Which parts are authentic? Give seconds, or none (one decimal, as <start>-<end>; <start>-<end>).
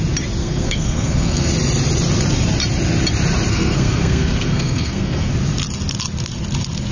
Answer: 0.0-0.4; 1.5-3.5; 5.3-6.9